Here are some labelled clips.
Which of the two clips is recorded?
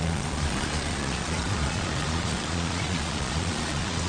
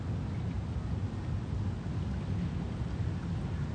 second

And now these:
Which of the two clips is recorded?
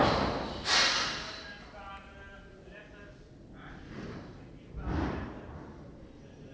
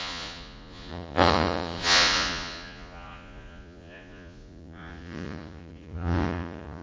first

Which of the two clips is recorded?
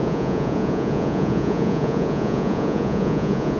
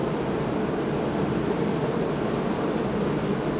second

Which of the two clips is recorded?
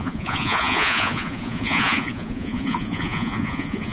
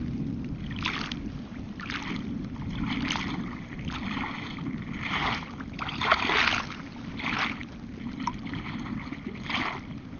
second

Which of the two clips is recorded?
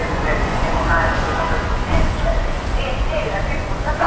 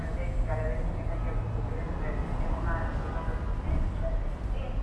second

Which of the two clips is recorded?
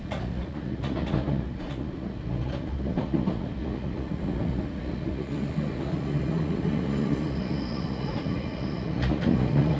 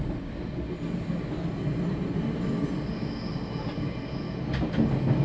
second